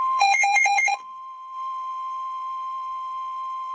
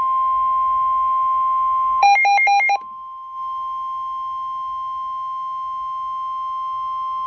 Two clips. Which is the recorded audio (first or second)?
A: second